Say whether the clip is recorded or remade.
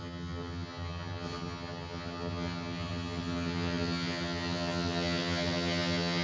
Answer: remade